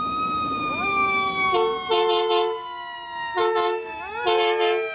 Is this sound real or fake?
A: real